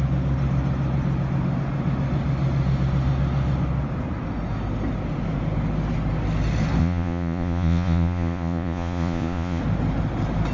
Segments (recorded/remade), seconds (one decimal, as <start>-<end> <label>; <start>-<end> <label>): 0.0-6.8 recorded; 6.8-9.6 remade; 9.6-10.5 recorded